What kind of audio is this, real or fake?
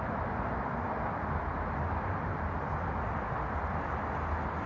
real